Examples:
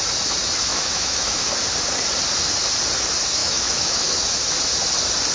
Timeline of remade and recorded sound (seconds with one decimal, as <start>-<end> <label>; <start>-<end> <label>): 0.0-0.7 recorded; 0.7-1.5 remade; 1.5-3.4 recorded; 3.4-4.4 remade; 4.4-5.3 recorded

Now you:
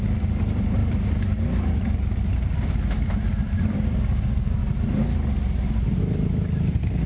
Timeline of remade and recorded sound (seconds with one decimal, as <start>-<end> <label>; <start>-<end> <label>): 0.0-0.8 remade; 0.8-3.5 recorded; 3.5-4.6 remade; 4.6-6.0 recorded; 6.0-7.1 remade

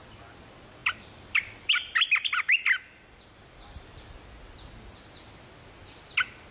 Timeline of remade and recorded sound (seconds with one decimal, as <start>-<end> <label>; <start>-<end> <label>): 0.0-0.8 recorded; 0.8-4.1 remade; 4.1-6.5 recorded

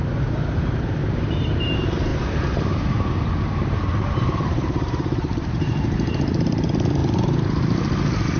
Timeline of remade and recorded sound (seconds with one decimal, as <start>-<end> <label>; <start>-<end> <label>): 0.0-8.4 remade

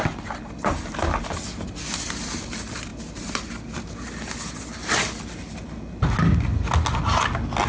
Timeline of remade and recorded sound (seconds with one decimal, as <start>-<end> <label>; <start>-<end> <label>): 0.0-7.7 recorded

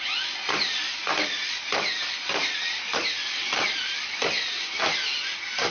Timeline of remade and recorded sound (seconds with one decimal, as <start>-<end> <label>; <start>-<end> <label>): 0.0-1.4 recorded; 1.4-4.8 remade; 4.8-5.7 recorded

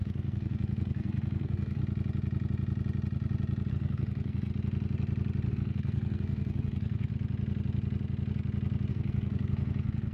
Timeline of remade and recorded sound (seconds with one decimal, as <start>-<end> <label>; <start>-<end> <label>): 0.0-1.8 remade; 1.8-3.7 recorded; 3.7-4.5 remade; 4.5-5.5 recorded; 5.5-7.1 remade; 7.1-8.9 recorded; 8.9-10.1 remade

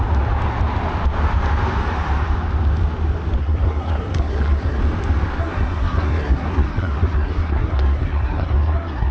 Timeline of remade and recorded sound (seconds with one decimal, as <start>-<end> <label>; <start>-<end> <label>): 0.0-3.4 recorded; 3.4-4.8 remade; 4.8-5.4 recorded; 5.4-9.1 remade